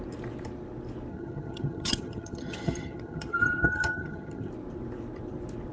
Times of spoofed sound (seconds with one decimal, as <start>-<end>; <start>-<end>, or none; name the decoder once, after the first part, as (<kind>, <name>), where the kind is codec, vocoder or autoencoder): 1.1-4.5 (vocoder, HiFi-GAN)